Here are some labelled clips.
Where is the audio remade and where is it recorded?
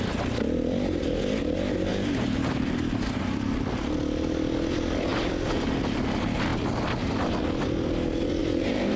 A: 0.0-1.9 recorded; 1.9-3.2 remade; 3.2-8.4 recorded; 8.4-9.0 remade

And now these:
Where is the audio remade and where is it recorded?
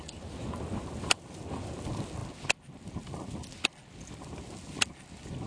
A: 0.0-5.5 recorded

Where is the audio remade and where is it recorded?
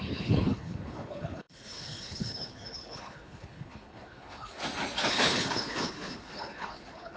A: 0.0-4.6 remade; 4.6-5.1 recorded; 5.1-7.2 remade